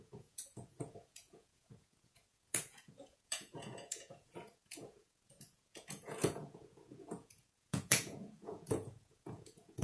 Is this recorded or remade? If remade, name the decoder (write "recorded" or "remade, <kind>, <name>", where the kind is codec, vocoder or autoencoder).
remade, vocoder, Vocos